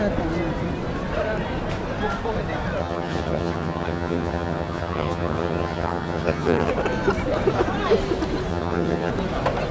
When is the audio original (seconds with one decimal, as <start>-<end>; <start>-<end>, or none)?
0.0-2.8; 6.7-8.5; 9.1-9.7